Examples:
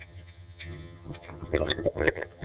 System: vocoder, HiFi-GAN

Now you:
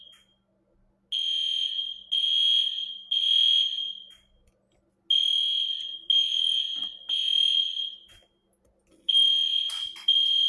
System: none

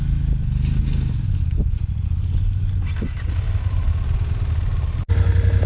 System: none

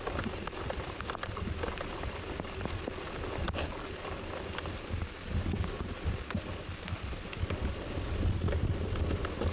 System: none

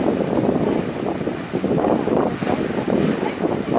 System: none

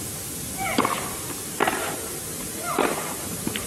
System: none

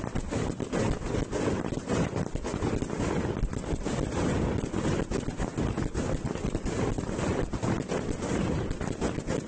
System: none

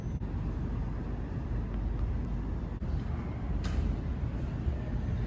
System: none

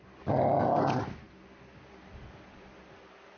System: none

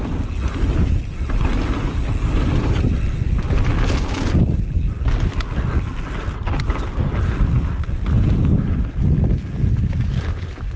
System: none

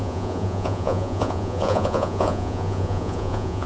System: vocoder, Vocos